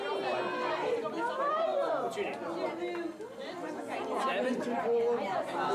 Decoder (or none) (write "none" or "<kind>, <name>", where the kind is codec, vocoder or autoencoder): none